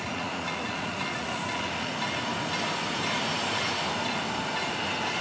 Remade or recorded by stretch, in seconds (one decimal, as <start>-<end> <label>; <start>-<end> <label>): 0.0-1.9 remade; 1.9-5.2 recorded